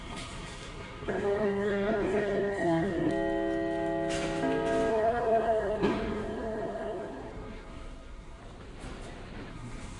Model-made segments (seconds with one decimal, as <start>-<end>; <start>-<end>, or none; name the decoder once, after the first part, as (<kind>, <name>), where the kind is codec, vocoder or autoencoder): 0.0-3.1 (codec, SNAC); 4.9-8.4; 9.5-10.0